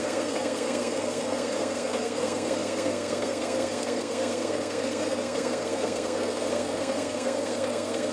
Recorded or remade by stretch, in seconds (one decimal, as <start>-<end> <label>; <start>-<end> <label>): 0.0-8.1 remade